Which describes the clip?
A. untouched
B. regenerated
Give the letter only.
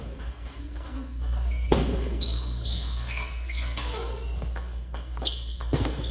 B